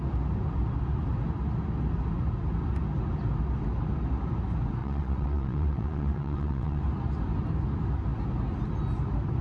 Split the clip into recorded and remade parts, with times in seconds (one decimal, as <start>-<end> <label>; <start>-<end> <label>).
0.0-4.8 recorded; 4.8-6.8 remade; 6.8-9.4 recorded